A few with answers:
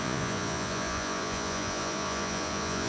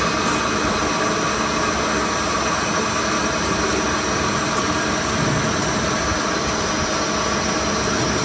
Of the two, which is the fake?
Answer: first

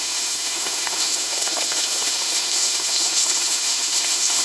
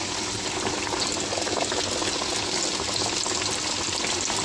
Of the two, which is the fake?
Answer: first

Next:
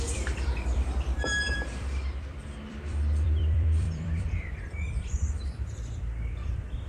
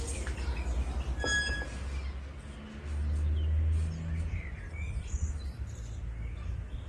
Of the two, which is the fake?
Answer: first